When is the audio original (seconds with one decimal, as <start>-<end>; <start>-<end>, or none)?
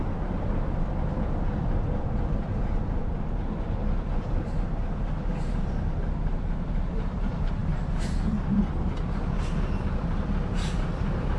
0.0-7.6; 8.6-11.4